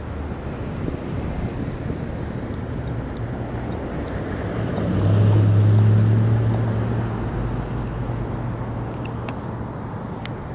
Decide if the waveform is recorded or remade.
recorded